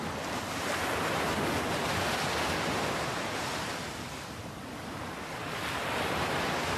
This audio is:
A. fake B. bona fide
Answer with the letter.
B